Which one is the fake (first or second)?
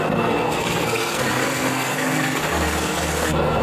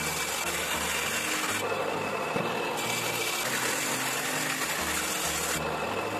first